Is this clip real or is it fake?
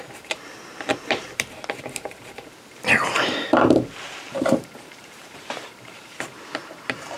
fake